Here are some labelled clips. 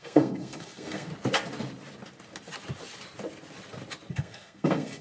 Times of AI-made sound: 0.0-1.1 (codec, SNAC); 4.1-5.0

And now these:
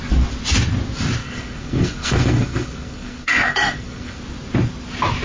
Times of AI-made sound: 1.2-4.2 (codec, SNAC)

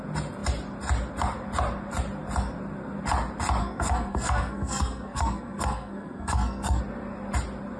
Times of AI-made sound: 3.6-6.8 (codec, SNAC)

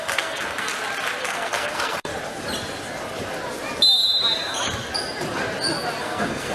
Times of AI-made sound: 0.0-0.7 (codec, SNAC); 1.2-2.1; 6.0-6.5

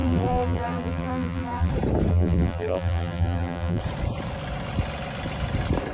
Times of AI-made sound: 0.0-1.7 (vocoder, BigVGAN v2); 2.1-3.8

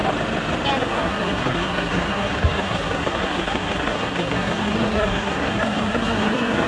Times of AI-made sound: 0.8-6.7 (codec, SNAC)